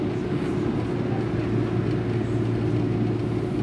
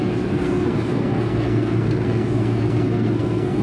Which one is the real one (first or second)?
first